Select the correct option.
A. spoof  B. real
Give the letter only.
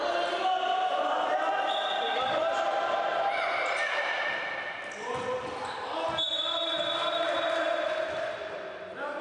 B